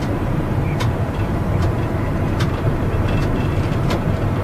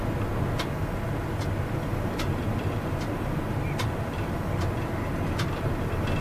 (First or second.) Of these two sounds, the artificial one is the first